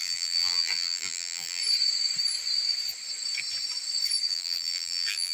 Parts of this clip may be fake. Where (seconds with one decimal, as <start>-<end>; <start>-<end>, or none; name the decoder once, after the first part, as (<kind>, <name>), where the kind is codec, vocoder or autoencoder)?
0.0-1.6 (vocoder, BigVGAN v2); 4.3-5.3